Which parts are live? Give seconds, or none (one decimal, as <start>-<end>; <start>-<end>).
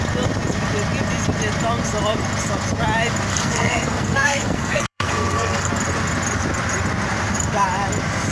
0.0-3.3; 5.7-8.3